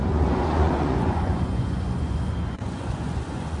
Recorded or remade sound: remade